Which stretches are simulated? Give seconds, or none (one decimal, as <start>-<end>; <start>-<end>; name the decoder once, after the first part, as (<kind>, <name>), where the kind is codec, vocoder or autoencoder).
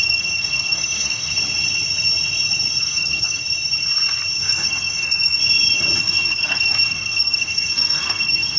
0.0-1.3 (codec, SNAC); 2.8-3.4; 4.4-5.4; 6.0-8.6